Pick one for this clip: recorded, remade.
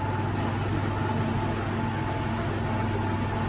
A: recorded